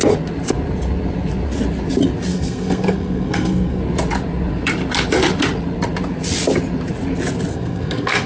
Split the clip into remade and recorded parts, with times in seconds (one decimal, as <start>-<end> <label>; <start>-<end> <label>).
0.0-2.3 recorded; 2.3-3.8 remade; 3.8-7.5 recorded; 7.5-8.3 remade